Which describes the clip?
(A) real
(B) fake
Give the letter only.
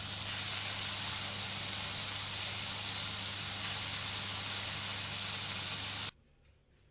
A